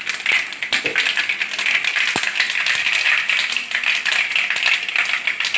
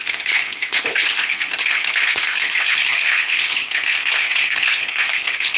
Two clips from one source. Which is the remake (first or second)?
second